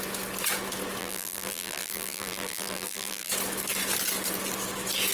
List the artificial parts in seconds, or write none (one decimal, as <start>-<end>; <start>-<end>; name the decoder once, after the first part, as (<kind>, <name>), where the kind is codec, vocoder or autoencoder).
1.0-3.3 (vocoder, BigVGAN v2)